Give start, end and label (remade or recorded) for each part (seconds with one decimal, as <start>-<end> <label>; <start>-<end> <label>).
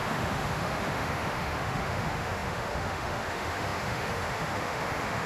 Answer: 0.0-5.3 remade